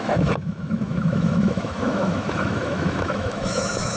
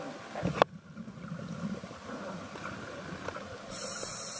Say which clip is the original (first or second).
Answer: second